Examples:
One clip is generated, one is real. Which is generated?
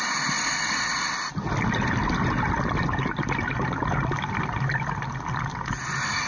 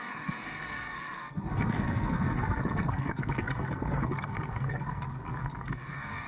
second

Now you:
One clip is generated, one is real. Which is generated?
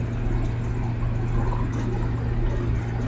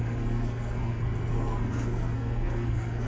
second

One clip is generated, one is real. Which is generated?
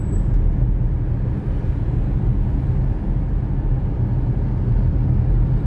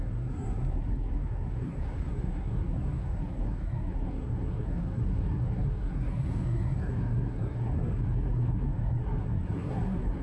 second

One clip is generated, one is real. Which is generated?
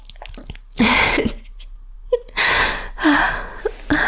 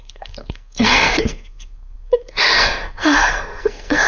second